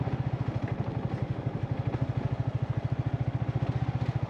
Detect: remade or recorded recorded